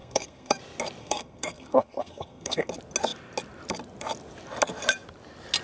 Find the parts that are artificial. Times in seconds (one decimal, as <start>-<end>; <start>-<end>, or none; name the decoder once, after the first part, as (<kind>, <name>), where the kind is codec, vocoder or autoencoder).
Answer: 0.0-0.6 (codec, SNAC); 1.0-2.7